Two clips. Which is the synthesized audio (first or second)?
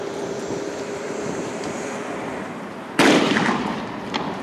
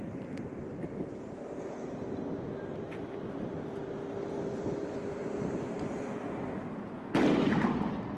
first